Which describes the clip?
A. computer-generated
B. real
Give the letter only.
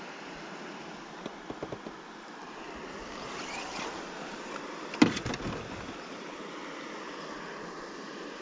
B